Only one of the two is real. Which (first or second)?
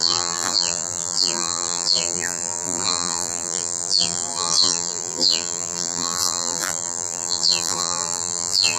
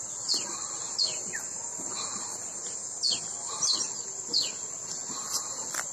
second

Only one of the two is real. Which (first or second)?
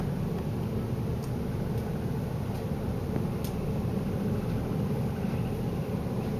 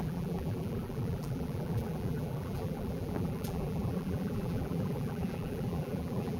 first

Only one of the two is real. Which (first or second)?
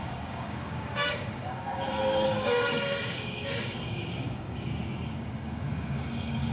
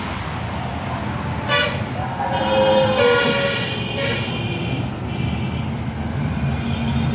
second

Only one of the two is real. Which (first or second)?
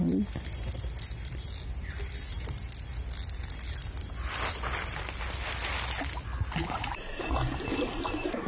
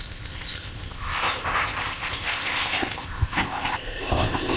first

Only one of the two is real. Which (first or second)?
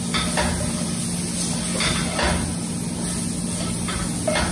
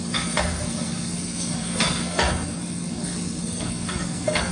first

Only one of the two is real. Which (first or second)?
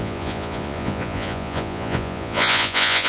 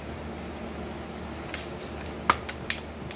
second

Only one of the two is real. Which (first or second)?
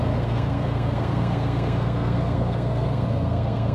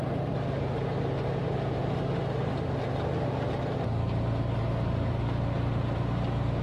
second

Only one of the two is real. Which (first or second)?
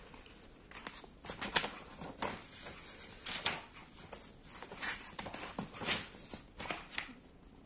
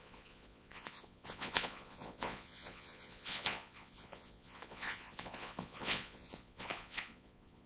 first